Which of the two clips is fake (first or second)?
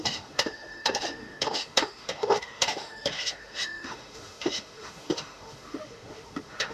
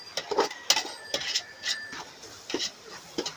first